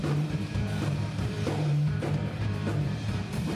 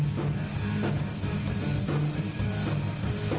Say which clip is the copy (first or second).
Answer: first